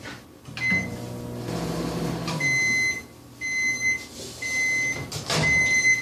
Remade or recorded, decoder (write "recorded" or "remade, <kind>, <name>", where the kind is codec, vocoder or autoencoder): recorded